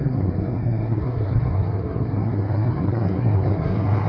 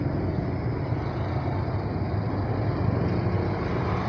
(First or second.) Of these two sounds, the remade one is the first